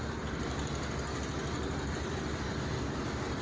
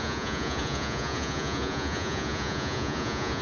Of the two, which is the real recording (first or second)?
first